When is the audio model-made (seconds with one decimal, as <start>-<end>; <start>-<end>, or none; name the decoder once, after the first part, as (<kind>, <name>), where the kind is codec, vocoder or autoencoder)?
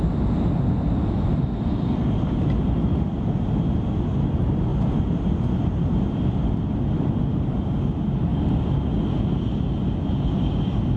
none